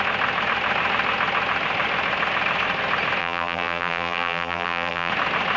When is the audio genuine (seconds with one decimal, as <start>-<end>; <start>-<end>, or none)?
0.0-3.2; 5.1-5.6